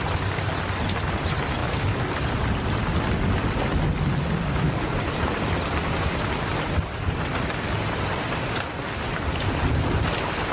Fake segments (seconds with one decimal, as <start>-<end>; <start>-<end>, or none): none